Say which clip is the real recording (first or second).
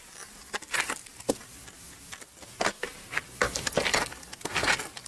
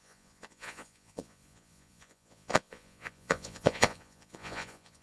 first